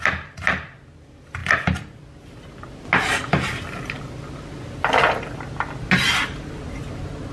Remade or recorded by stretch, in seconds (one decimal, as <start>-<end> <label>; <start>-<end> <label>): 0.0-7.3 recorded

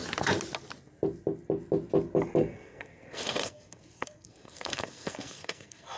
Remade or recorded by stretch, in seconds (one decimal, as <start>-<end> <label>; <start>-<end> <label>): 0.0-2.4 recorded; 2.4-6.0 remade

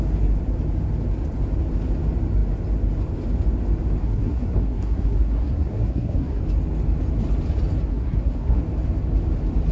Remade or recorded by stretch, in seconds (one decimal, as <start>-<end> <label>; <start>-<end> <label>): 0.0-4.0 recorded; 4.0-6.4 remade; 6.4-7.9 recorded; 7.9-8.6 remade; 8.6-9.7 recorded

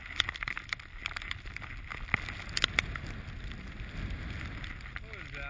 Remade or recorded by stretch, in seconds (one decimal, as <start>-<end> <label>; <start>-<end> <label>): 0.0-5.5 recorded